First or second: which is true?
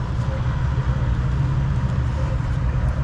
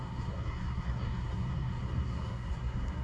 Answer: first